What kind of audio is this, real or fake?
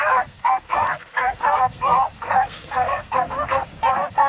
fake